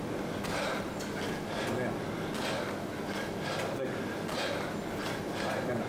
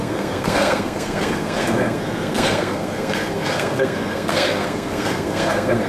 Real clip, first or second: first